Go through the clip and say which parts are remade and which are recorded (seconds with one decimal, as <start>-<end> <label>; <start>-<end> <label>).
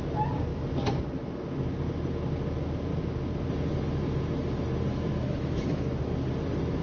0.0-4.9 recorded; 4.9-6.0 remade; 6.0-6.8 recorded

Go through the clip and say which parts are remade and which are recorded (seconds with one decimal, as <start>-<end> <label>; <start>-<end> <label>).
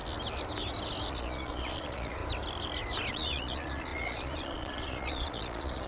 0.0-1.1 recorded; 1.1-2.2 remade; 2.2-3.1 recorded; 3.1-5.9 remade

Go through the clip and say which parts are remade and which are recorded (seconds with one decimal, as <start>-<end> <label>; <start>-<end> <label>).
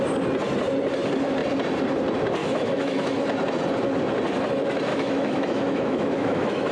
0.0-2.4 recorded; 2.4-3.2 remade; 3.2-4.9 recorded; 4.9-6.7 remade